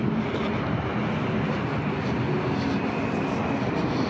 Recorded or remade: recorded